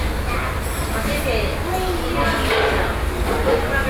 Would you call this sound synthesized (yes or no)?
no